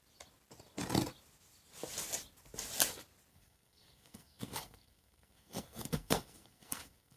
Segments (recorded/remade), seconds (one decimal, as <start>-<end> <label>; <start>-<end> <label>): 0.0-3.3 recorded; 3.3-7.2 remade